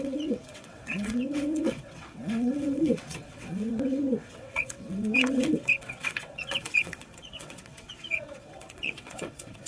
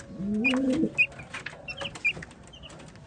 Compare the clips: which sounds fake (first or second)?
first